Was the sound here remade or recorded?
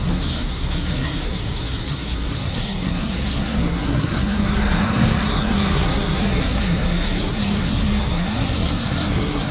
remade